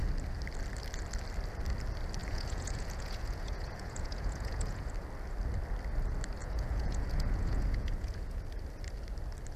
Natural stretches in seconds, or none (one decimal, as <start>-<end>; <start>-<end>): 0.0-2.2; 4.9-6.4; 8.4-9.6